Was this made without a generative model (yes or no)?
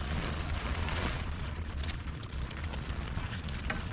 no